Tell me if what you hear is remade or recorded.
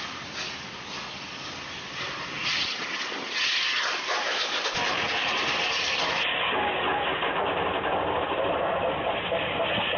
recorded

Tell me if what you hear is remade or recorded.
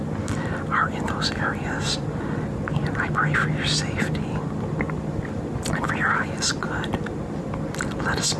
recorded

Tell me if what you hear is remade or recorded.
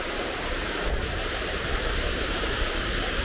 remade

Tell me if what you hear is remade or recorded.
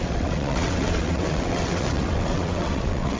remade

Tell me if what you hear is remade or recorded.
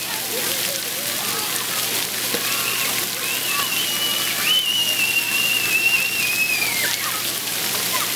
recorded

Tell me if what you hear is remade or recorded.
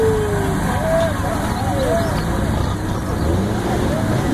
recorded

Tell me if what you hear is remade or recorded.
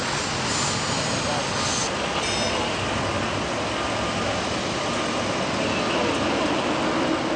recorded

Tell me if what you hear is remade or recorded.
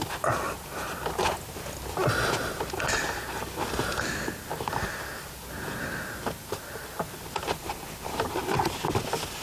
recorded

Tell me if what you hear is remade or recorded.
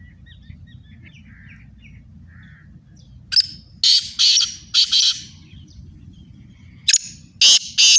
recorded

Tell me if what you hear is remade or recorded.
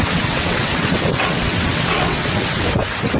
remade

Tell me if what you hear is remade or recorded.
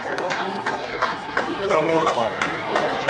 remade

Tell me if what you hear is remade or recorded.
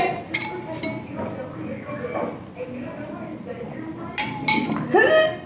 recorded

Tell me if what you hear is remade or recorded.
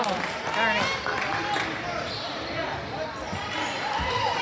recorded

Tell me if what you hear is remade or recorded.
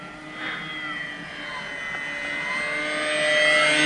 recorded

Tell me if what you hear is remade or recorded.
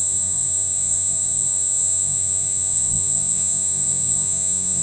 remade